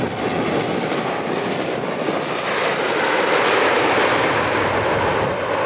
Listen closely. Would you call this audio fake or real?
real